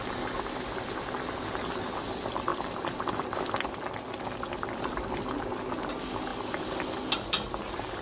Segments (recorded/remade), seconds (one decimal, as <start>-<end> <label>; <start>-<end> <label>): 0.0-8.0 recorded